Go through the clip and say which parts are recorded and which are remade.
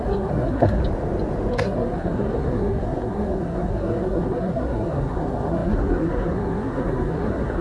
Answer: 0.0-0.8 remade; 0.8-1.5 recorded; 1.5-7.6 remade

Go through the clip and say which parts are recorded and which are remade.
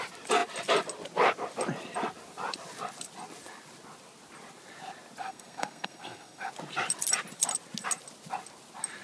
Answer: 0.0-5.2 recorded; 5.2-6.5 remade; 6.5-9.0 recorded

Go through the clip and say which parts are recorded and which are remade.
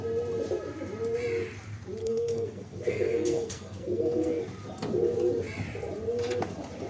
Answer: 0.0-2.0 recorded; 2.0-4.4 remade; 4.4-6.9 recorded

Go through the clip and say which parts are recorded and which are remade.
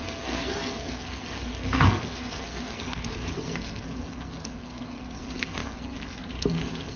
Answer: 0.0-7.0 remade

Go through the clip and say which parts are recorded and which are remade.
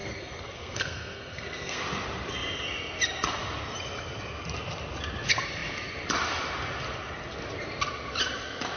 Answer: 0.0-1.8 remade; 1.8-8.8 recorded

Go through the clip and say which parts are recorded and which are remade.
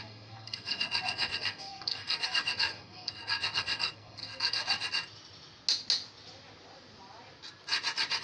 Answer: 0.0-4.6 remade; 4.6-8.2 recorded